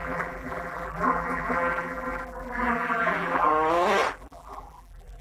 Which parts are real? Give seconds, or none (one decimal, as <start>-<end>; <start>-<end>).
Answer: 3.5-4.1